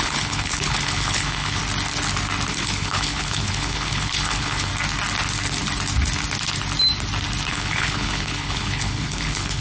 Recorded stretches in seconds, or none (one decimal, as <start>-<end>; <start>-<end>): 1.6-2.5; 4.7-7.5